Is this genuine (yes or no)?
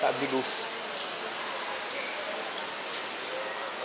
yes